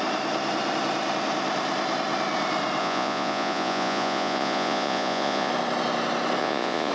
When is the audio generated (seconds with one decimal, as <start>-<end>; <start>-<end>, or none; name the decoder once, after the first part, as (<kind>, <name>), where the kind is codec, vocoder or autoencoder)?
2.8-5.5 (vocoder, Vocos); 6.4-6.9